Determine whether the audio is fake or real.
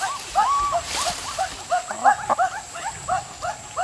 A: real